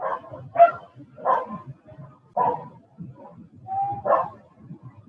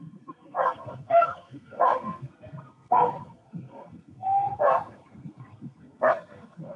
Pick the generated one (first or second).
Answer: second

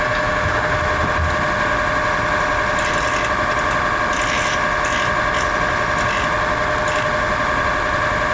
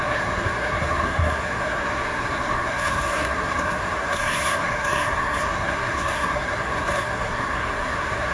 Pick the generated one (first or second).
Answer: second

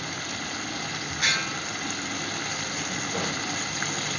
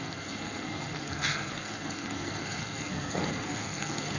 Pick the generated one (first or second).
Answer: second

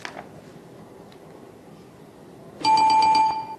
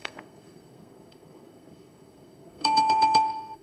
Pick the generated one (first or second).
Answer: second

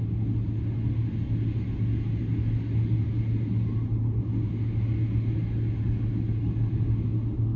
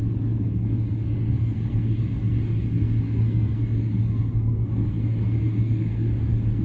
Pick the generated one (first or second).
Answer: second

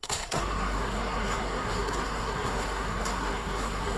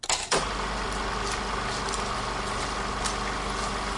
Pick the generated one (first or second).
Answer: first